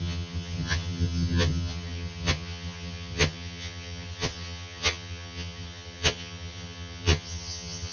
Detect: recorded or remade remade